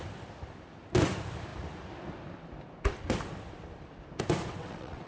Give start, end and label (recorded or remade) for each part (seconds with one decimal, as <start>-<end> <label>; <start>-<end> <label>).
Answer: 0.0-4.5 recorded; 4.5-5.1 remade